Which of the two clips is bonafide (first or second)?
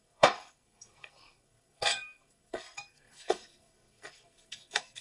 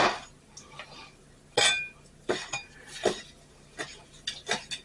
second